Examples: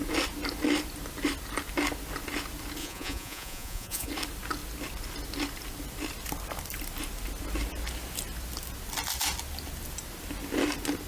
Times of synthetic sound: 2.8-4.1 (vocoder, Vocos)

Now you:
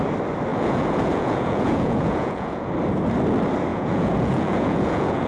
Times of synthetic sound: 0.5-2.7 (vocoder, Vocos); 3.7-5.3

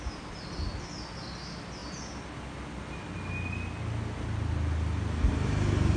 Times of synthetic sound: none